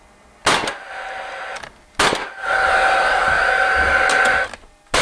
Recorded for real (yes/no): yes